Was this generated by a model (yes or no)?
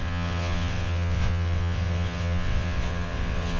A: yes